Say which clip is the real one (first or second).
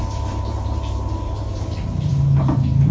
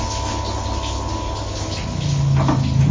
second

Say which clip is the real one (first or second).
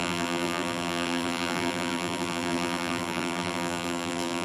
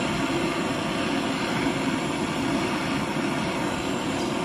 second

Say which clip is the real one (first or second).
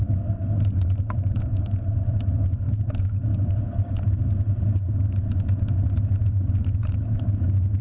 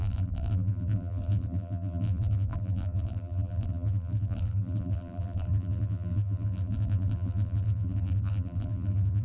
first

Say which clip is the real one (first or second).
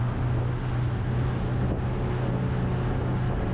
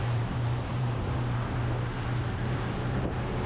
first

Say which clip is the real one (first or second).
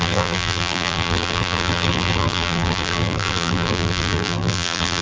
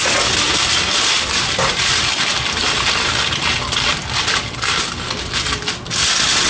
second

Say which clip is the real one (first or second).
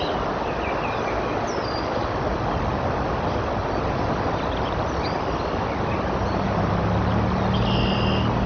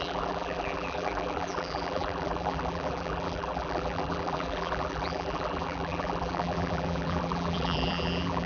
first